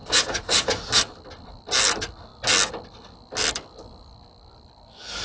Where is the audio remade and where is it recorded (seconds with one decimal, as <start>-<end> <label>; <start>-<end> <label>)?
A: 0.0-0.8 remade; 0.8-5.2 recorded